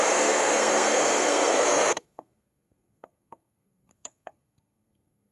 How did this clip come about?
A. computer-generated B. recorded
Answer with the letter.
A